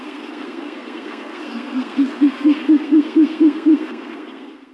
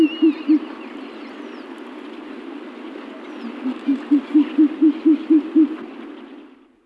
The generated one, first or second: first